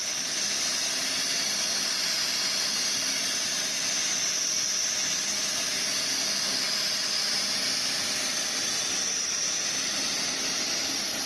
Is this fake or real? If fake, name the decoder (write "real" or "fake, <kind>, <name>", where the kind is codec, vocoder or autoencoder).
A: real